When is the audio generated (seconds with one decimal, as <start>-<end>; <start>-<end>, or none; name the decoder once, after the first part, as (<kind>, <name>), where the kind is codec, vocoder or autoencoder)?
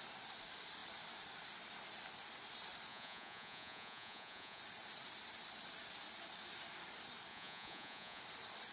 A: 2.9-4.6 (vocoder, Vocos); 7.3-8.2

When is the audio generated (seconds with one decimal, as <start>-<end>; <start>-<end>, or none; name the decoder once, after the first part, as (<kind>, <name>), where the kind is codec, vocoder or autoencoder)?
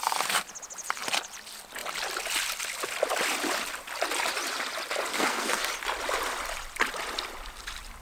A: 5.1-5.7 (codec, SNAC)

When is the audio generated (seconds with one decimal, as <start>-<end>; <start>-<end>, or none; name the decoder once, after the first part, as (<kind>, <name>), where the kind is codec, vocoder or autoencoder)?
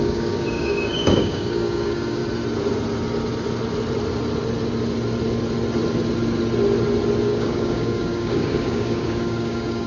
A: 0.0-2.2 (codec, DAC); 7.2-9.9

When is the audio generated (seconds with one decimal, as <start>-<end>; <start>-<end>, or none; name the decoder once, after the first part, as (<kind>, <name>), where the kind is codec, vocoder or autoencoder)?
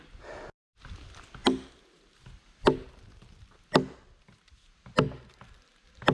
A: none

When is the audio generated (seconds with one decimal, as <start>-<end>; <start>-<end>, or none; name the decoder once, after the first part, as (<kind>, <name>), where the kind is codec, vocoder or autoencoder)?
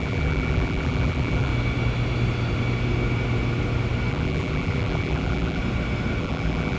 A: 0.0-1.5 (vocoder, BigVGAN v2); 4.1-5.6; 6.2-6.8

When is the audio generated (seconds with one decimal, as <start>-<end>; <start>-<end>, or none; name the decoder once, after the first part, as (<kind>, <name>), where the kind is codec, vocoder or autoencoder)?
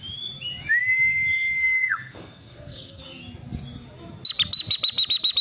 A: 1.6-3.0 (codec, SNAC)